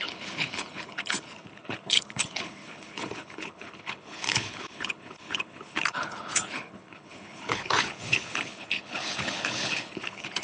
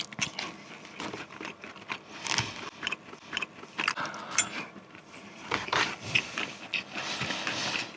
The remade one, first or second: first